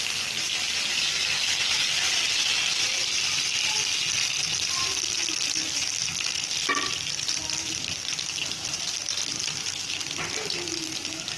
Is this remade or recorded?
recorded